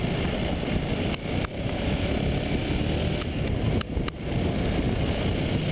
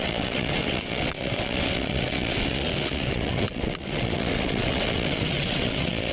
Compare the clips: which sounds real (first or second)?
first